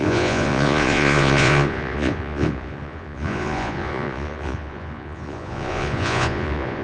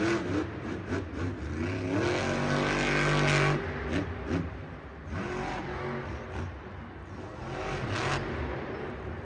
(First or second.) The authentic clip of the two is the second